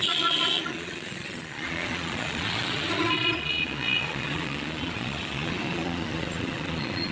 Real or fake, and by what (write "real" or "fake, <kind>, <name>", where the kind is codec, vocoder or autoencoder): fake, vocoder, Vocos